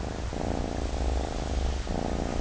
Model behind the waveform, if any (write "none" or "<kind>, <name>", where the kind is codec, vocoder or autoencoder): none